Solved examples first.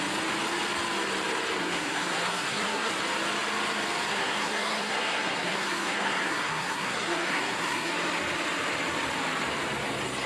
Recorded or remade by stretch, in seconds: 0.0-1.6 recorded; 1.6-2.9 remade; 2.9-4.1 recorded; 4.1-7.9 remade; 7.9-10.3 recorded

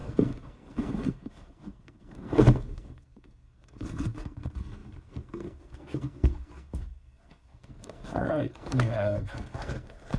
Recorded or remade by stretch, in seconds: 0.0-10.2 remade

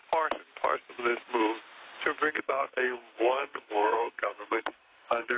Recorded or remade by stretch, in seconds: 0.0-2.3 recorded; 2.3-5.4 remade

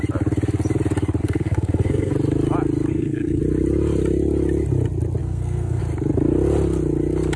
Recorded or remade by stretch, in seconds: 0.0-1.2 recorded; 1.2-2.1 remade; 2.1-2.9 recorded; 2.9-3.4 remade; 3.4-5.2 recorded; 5.2-5.8 remade; 5.8-7.4 recorded

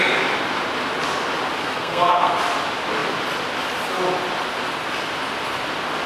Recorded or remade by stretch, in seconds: 0.0-1.6 recorded; 1.6-2.3 remade; 2.3-6.1 recorded